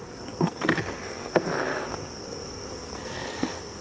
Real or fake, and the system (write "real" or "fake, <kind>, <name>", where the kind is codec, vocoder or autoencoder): fake, codec, SNAC